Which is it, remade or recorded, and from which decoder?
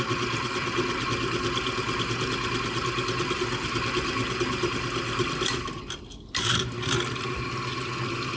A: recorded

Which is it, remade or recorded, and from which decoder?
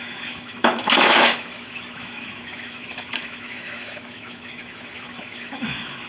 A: remade, autoencoder, DAC-VAE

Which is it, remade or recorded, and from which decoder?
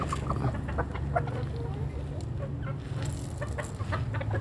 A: recorded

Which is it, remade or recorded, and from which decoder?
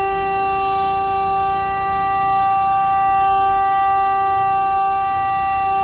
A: remade, autoencoder, DAC-VAE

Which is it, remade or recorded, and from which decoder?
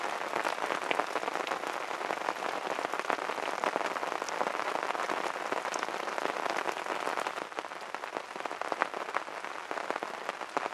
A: recorded